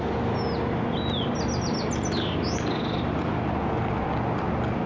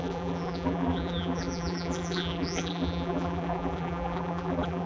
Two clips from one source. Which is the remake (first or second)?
second